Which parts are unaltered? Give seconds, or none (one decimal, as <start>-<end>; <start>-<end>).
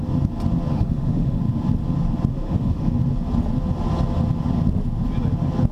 0.0-0.7; 1.4-2.3; 3.0-5.7